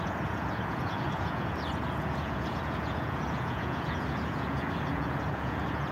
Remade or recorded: remade